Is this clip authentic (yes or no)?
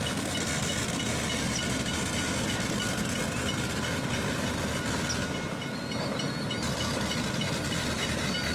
yes